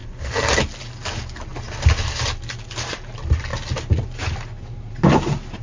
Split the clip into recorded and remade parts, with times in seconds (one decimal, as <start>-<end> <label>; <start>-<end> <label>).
0.0-0.5 remade; 0.5-5.6 recorded